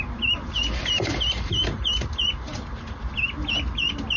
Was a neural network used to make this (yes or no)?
no